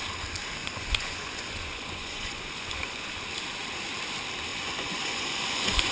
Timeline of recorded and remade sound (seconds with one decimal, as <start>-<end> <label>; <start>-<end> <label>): 0.0-0.6 recorded; 0.6-3.2 remade; 3.2-4.5 recorded; 4.5-5.9 remade